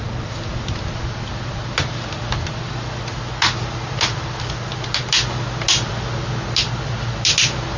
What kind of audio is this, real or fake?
real